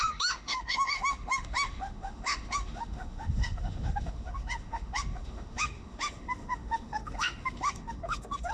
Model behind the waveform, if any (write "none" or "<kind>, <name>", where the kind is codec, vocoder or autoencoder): autoencoder, DAC-VAE